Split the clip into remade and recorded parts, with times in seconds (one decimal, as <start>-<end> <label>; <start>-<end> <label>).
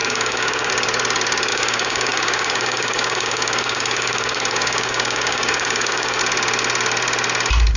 0.0-0.7 remade; 0.7-1.5 recorded; 1.5-6.2 remade; 6.2-7.8 recorded